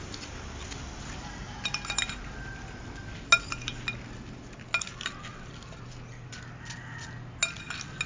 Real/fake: real